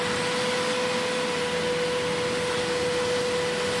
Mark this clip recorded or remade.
recorded